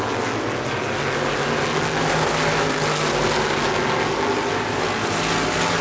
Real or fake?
real